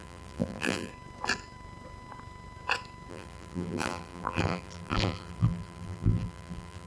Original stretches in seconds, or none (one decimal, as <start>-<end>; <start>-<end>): 0.9-3.1